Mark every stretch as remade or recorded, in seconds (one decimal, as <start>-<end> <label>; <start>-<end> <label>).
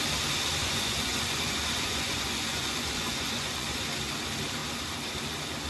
0.0-0.6 recorded; 0.6-3.8 remade; 3.8-5.7 recorded